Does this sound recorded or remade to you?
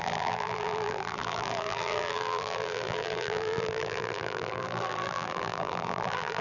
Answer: remade